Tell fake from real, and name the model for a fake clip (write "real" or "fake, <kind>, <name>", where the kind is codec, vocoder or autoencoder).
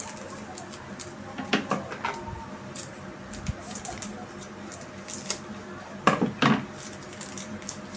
real